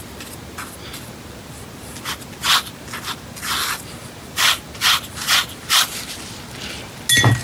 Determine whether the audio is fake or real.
real